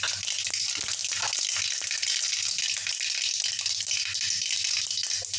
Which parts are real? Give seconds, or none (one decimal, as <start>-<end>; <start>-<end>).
0.0-5.4